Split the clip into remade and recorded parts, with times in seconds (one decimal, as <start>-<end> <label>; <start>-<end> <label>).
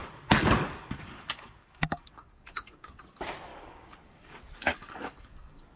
0.0-3.0 remade; 3.0-3.5 recorded; 3.5-5.8 remade